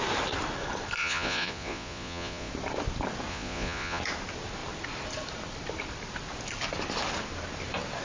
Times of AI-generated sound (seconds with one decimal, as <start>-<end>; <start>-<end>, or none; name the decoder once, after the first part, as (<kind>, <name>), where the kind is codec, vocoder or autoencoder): 1.0-2.5 (vocoder, Vocos); 3.3-4.0